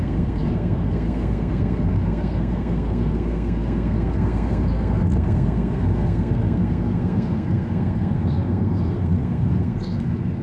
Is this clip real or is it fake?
fake